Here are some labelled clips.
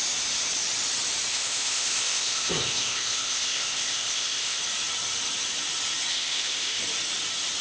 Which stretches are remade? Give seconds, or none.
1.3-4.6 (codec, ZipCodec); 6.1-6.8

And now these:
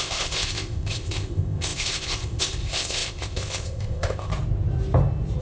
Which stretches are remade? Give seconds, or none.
0.0-4.3 (codec, ZipCodec)

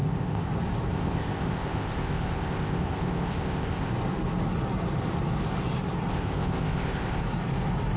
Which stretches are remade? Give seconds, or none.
0.0-0.5 (codec, ZipCodec); 0.9-3.9; 6.1-7.2

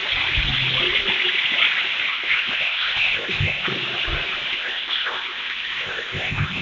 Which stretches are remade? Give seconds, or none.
2.1-3.7 (codec, ZipCodec); 4.5-6.6

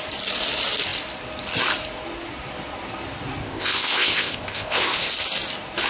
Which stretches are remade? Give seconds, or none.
3.4-5.1 (codec, ZipCodec)

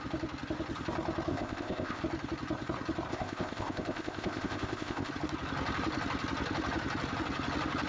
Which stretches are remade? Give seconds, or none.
1.3-2.0 (codec, ZipCodec); 3.1-5.1

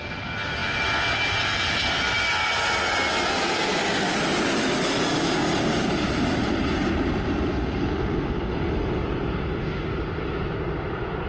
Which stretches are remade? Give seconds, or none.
none